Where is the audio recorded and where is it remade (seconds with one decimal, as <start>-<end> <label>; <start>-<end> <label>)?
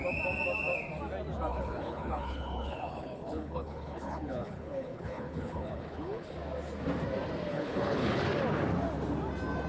0.0-1.5 recorded; 1.5-6.3 remade; 6.3-7.5 recorded; 7.5-8.2 remade; 8.2-9.7 recorded